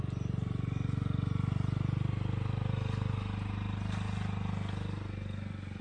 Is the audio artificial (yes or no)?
no